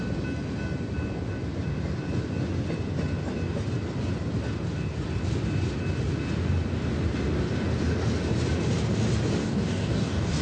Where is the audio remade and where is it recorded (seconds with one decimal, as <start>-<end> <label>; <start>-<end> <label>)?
0.0-9.4 recorded; 9.4-10.4 remade